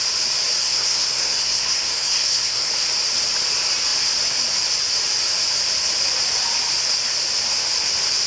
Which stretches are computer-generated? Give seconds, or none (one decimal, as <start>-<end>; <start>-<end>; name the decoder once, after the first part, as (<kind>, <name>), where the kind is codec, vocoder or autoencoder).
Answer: 0.6-2.7 (codec, SNAC)